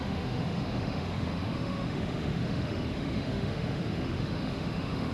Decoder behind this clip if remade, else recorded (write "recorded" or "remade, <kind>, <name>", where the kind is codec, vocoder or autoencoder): remade, autoencoder, DAC-VAE